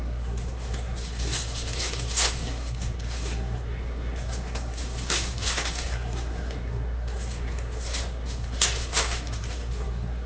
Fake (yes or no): yes